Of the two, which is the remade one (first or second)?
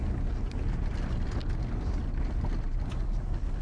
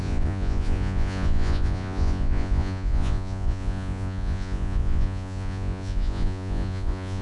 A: second